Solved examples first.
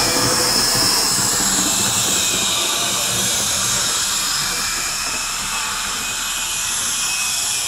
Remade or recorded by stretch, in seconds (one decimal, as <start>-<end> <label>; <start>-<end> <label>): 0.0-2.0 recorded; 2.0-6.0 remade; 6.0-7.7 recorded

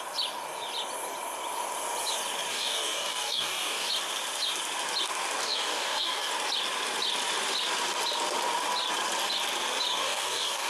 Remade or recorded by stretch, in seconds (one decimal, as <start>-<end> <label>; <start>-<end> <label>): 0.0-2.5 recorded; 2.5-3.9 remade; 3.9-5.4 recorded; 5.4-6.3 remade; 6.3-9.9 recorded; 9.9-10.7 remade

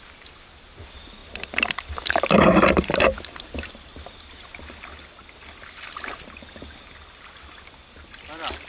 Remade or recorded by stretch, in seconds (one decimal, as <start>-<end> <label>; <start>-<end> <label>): 0.0-8.7 recorded

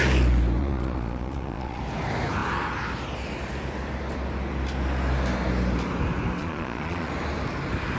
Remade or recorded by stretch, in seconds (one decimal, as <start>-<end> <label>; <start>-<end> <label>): 0.0-0.6 recorded; 0.6-1.8 remade; 1.8-6.4 recorded; 6.4-7.1 remade; 7.1-8.0 recorded